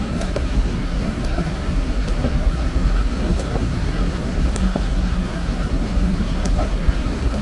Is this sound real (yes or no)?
no